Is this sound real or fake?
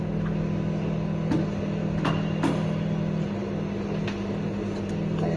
real